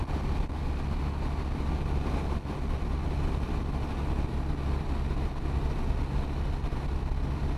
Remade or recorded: recorded